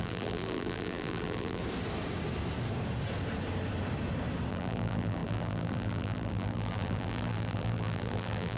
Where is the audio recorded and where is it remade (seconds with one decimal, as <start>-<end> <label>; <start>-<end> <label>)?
0.0-1.6 remade; 1.6-4.5 recorded; 4.5-8.6 remade